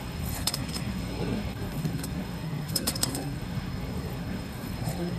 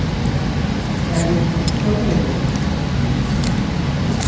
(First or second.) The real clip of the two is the second